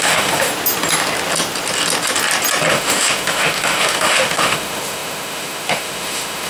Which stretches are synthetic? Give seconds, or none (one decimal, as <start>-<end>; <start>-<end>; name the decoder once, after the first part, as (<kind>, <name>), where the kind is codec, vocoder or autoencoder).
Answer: 0.0-0.5 (autoencoder, DAC-VAE); 2.7-6.5